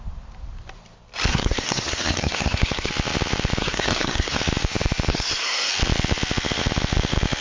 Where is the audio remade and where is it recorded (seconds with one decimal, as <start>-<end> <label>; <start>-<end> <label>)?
0.0-1.3 recorded; 1.3-2.9 remade; 2.9-3.6 recorded; 3.6-4.4 remade; 4.4-5.1 recorded; 5.1-5.7 remade; 5.7-7.4 recorded